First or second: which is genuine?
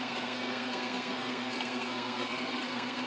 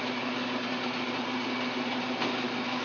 second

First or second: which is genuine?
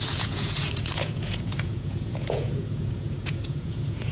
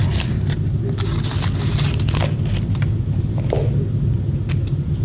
second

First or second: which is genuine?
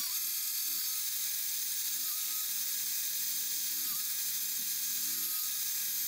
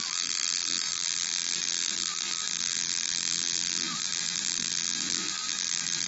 first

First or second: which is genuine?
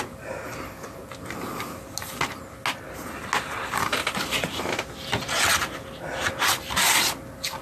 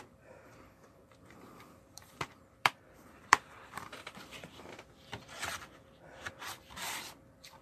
first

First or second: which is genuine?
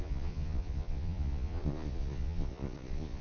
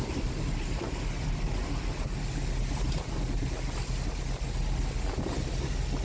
second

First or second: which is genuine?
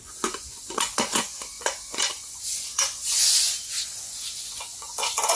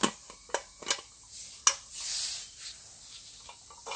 second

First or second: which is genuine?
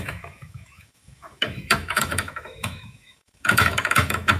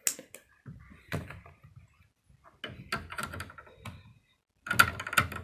second